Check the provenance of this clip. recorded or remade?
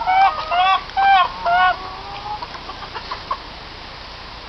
recorded